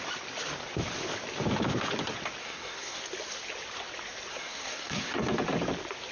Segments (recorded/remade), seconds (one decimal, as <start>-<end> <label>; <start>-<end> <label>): 0.0-2.4 recorded; 2.4-3.0 remade; 3.0-4.3 recorded; 4.3-5.1 remade; 5.1-6.1 recorded